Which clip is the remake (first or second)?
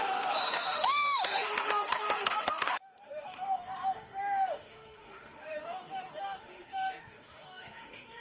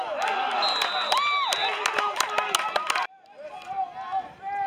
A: first